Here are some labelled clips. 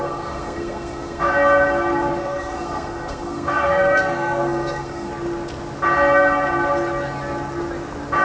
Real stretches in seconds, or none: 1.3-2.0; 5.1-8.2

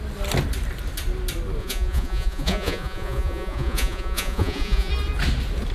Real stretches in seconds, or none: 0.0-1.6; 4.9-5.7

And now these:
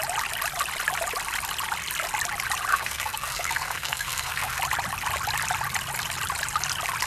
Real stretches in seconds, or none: 0.0-2.7; 4.6-7.1

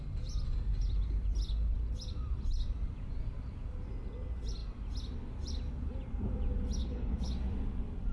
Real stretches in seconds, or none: 0.0-6.8; 7.3-8.1

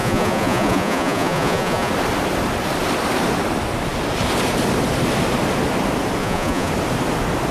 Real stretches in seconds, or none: 1.9-6.2; 6.7-7.5